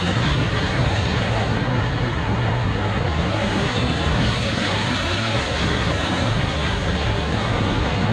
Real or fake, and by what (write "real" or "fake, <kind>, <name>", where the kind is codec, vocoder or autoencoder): fake, codec, SNAC